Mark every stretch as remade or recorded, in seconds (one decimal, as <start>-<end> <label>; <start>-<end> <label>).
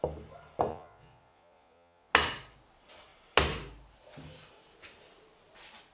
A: 0.0-0.7 recorded; 0.7-2.1 remade; 2.1-5.9 recorded